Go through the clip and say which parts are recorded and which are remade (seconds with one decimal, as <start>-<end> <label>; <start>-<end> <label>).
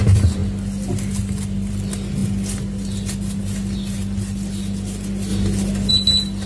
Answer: 0.0-6.5 recorded